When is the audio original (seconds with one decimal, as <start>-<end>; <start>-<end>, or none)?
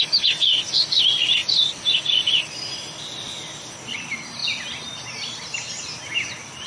0.0-6.7